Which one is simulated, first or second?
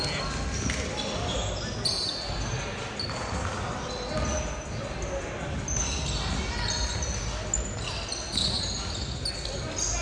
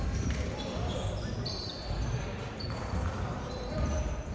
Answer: second